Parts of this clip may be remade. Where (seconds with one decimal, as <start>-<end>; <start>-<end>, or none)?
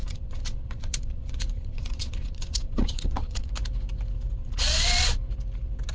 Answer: 0.0-3.5; 4.4-5.2